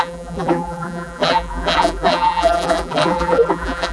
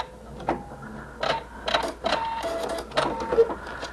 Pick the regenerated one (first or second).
first